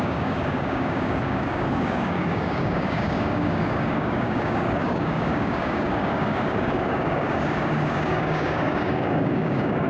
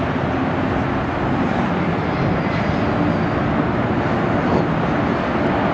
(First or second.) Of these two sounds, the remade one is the first